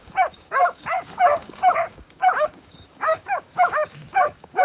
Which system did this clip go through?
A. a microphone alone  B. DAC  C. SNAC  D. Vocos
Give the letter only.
B